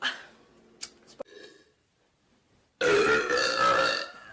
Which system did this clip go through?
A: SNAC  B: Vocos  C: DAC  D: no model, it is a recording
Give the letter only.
D